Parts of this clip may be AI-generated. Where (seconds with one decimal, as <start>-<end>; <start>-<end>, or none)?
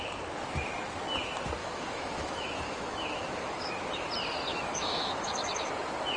1.6-4.1; 4.5-5.7